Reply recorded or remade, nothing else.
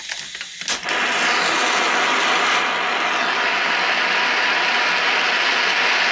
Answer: recorded